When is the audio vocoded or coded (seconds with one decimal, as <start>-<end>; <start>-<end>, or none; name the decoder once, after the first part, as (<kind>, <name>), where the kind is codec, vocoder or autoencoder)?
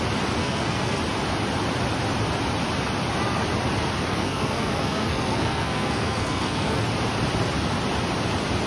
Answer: 0.4-1.0 (codec, SNAC); 4.1-6.8